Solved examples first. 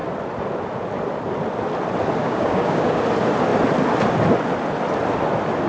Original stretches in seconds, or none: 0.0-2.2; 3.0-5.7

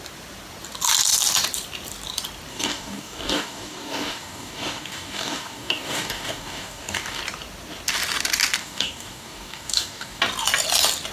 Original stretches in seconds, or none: 0.0-2.5; 7.2-8.6; 10.2-11.1

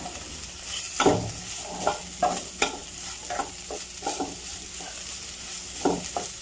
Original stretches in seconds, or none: 0.0-6.4

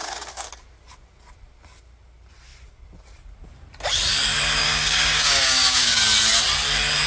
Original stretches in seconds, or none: 0.5-4.6; 6.0-7.1

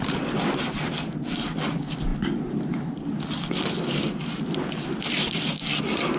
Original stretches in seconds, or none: 0.0-6.2

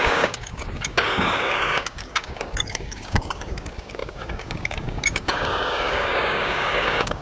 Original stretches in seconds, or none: none

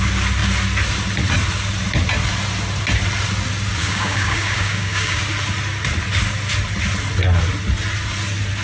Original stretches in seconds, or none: 0.0-3.8; 5.2-8.6

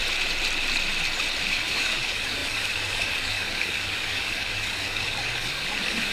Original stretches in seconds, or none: 0.0-1.5